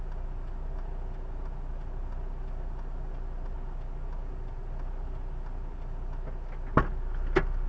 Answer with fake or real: real